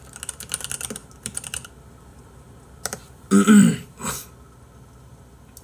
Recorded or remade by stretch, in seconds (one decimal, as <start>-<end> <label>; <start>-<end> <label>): 0.0-1.0 recorded; 1.0-1.7 remade; 1.7-2.1 recorded; 2.1-4.1 remade; 4.1-5.6 recorded